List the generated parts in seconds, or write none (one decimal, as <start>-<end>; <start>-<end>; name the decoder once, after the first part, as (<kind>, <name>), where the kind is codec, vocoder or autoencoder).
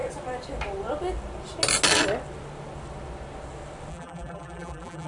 3.9-5.1 (vocoder, BigVGAN v2)